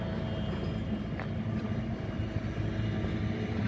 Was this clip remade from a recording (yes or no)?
no